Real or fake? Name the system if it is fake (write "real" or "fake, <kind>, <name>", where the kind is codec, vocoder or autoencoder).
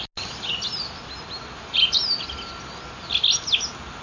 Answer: real